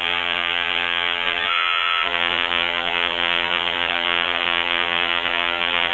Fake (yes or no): yes